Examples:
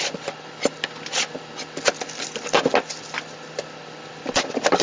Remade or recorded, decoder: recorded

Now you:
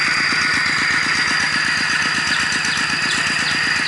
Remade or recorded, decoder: recorded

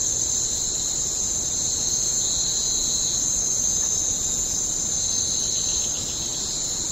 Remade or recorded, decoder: recorded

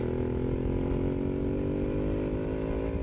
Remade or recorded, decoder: recorded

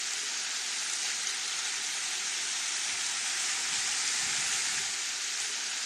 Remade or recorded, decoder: recorded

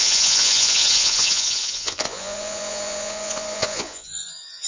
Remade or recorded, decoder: remade, vocoder, Vocos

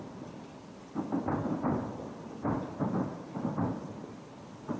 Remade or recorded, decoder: recorded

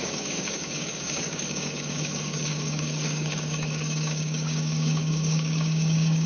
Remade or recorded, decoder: remade, codec, DAC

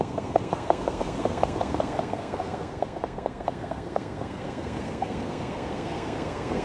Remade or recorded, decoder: remade, codec, SNAC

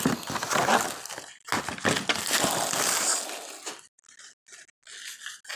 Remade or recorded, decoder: recorded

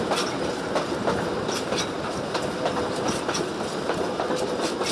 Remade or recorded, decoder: recorded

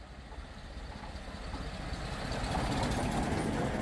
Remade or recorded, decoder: recorded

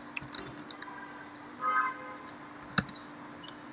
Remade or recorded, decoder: recorded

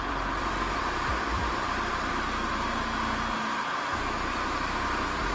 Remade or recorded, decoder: remade, vocoder, BigVGAN v2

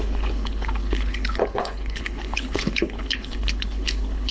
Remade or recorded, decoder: remade, codec, HILCodec